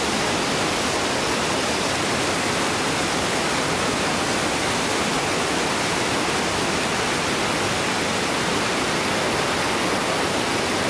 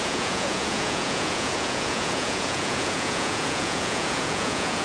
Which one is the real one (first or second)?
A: first